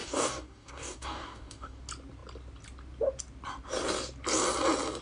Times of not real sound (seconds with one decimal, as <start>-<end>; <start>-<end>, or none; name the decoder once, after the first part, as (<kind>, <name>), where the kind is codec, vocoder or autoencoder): 0.0-1.8 (codec, DAC)